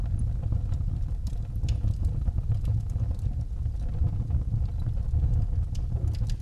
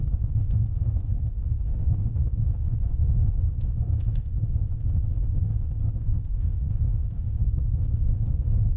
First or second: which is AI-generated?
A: second